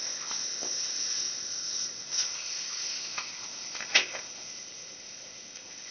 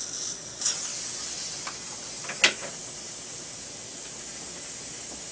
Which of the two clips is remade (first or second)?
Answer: first